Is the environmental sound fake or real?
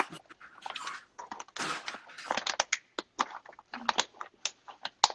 real